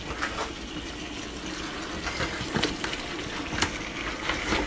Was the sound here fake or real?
real